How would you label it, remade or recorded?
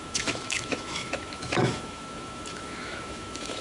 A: remade